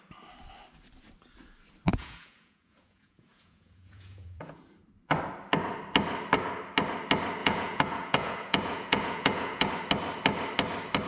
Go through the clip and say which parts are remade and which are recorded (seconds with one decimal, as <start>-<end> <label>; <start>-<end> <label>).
0.0-1.9 recorded; 1.9-4.7 remade; 4.7-7.4 recorded; 7.4-9.7 remade; 9.7-11.1 recorded